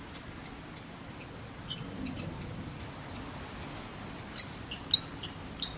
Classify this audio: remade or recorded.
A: recorded